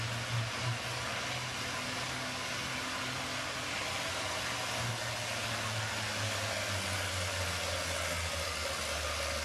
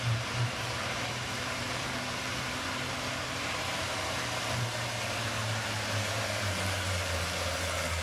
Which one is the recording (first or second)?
first